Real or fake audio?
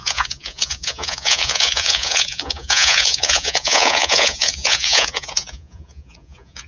fake